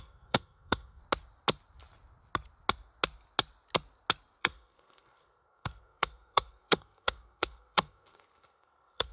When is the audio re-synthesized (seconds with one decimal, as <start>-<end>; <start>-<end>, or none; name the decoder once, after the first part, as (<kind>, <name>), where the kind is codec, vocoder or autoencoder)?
0.0-1.0 (codec, SNAC); 4.4-9.1